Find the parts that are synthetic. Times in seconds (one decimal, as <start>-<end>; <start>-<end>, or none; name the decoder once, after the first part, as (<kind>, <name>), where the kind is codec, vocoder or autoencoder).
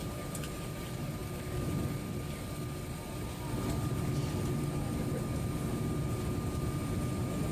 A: 0.0-1.2 (vocoder, BigVGAN v2); 5.7-7.5